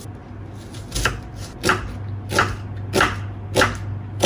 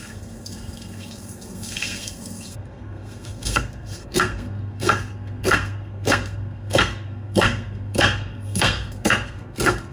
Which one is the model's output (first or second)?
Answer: second